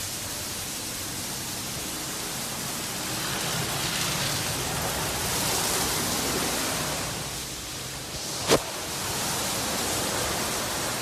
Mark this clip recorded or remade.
recorded